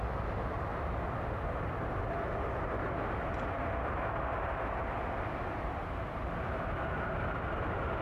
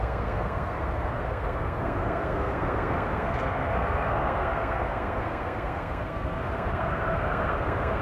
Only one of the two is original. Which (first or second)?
first